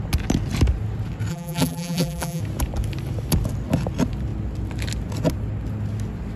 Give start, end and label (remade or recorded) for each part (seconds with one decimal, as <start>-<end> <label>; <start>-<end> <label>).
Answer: 0.0-1.3 recorded; 1.3-2.4 remade; 2.4-6.4 recorded